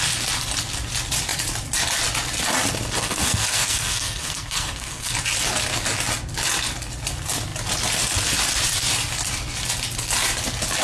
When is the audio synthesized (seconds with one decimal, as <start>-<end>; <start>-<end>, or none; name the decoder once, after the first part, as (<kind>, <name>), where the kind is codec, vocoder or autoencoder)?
3.0-5.1 (codec, SNAC)